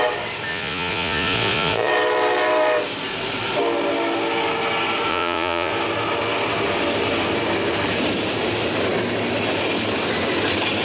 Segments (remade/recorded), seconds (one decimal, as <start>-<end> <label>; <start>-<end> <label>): 0.0-0.5 recorded; 0.5-1.9 remade; 1.9-5.1 recorded; 5.1-5.7 remade; 5.7-10.8 recorded